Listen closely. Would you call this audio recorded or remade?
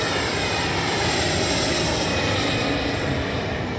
remade